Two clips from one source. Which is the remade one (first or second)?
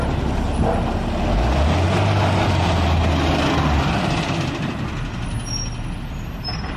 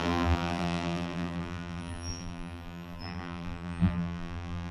second